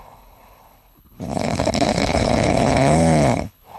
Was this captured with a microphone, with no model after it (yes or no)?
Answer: no